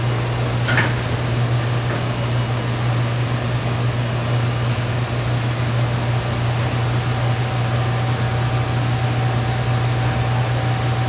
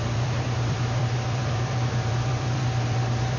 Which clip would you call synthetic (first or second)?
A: second